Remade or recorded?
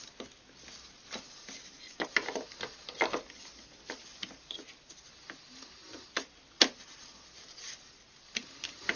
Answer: recorded